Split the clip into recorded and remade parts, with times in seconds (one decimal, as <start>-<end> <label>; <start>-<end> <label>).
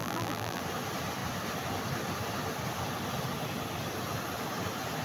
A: 0.0-0.6 remade; 0.6-5.0 recorded